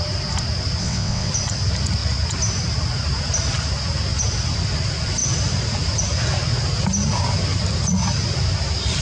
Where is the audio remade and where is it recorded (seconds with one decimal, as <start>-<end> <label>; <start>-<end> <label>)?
0.0-0.8 recorded; 0.8-1.3 remade; 1.3-9.0 recorded